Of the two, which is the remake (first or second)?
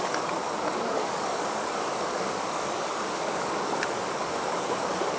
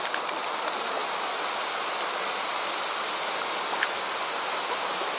first